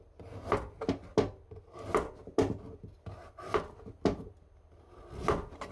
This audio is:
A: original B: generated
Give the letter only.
A